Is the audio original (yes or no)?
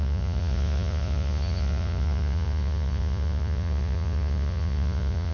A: no